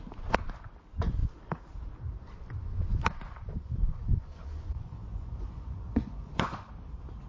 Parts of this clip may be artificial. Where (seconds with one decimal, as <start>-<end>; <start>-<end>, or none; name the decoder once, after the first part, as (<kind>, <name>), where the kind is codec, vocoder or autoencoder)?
2.6-6.7 (vocoder, Vocos)